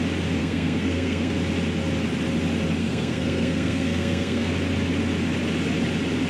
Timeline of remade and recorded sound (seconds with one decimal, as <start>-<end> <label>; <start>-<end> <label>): 0.0-0.4 recorded; 0.4-1.3 remade; 1.3-2.8 recorded; 2.8-4.5 remade; 4.5-6.3 recorded